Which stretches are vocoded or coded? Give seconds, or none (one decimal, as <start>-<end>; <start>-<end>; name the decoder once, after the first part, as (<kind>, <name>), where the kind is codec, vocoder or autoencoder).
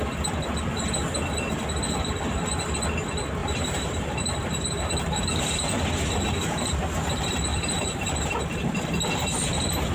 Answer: 3.4-5.4 (vocoder, BigVGAN v2); 7.5-8.8